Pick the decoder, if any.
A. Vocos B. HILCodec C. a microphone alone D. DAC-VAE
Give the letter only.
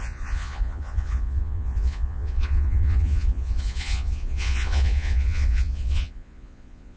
A